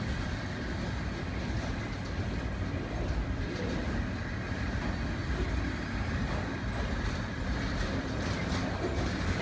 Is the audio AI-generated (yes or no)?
no